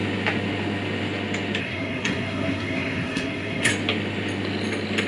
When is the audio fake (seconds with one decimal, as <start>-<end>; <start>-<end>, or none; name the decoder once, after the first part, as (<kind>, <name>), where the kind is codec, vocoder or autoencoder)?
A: 1.6-3.7 (codec, SNAC)